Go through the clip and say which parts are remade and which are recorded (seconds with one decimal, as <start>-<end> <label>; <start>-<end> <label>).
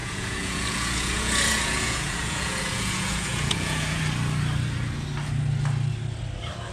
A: 0.0-4.0 remade; 4.0-6.7 recorded